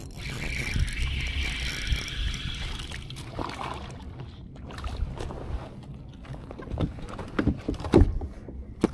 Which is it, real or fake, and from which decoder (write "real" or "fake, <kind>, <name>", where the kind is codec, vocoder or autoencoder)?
real